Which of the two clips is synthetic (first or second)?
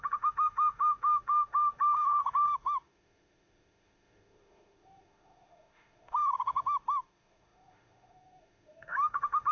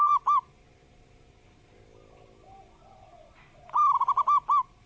first